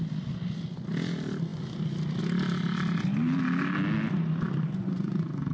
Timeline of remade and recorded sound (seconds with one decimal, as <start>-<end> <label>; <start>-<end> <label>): 0.0-4.8 recorded; 4.8-5.5 remade